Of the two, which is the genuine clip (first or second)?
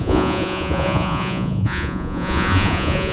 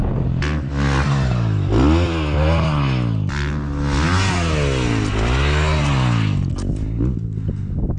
second